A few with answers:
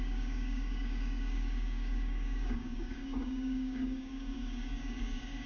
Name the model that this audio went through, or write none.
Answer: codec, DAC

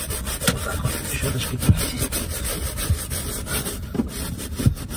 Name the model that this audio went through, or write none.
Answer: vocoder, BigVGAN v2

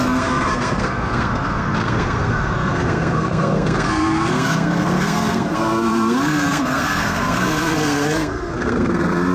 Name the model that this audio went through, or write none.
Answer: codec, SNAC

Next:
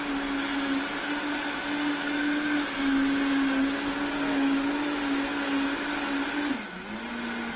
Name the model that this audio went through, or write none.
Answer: none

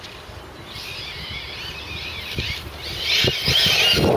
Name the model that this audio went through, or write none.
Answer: none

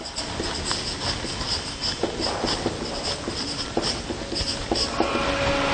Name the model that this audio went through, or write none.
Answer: none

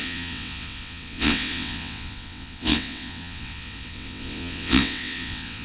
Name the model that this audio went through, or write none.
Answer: vocoder, WaveNeXt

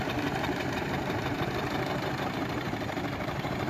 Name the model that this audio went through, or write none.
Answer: vocoder, BigVGAN v2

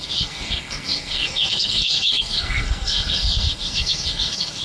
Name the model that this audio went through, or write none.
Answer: codec, SNAC